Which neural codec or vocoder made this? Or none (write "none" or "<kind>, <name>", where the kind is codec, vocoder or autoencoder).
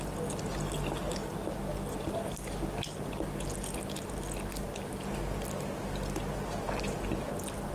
none